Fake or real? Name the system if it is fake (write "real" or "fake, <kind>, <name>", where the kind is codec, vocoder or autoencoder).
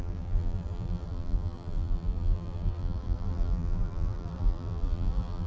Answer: fake, vocoder, BigVGAN v2